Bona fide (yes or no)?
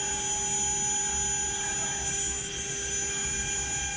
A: yes